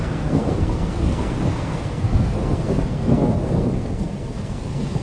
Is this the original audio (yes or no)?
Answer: no